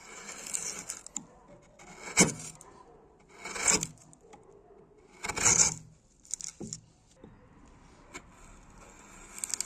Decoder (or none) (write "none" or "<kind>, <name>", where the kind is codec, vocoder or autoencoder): none